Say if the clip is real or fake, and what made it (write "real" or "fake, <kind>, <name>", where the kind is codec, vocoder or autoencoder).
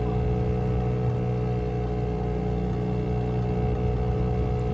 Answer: real